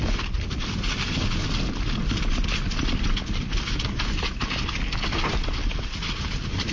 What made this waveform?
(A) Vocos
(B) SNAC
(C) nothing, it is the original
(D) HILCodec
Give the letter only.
C